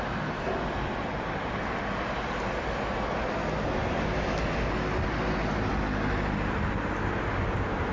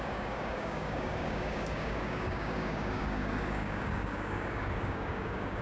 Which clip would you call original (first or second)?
first